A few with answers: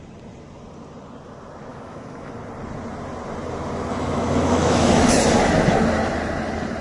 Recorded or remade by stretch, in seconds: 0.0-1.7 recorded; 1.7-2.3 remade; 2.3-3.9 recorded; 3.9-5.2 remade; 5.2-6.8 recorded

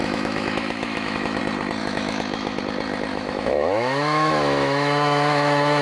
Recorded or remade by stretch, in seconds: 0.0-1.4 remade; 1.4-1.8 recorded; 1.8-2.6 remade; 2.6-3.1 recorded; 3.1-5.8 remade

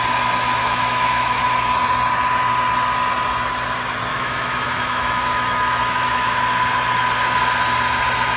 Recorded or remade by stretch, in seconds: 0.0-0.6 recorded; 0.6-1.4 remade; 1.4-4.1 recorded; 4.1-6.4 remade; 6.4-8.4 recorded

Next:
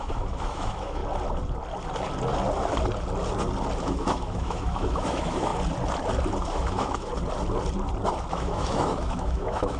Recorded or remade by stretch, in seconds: 0.0-1.0 remade; 1.0-3.8 recorded; 3.8-5.5 remade; 5.5-6.4 recorded; 6.4-7.1 remade; 7.1-8.3 recorded; 8.3-9.8 remade

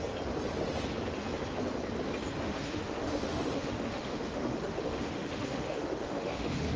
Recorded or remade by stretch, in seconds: 0.0-2.4 recorded; 2.4-6.8 remade

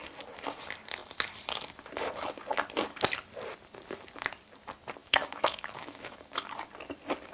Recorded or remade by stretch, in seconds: 0.0-5.0 recorded; 5.0-6.5 remade; 6.5-7.3 recorded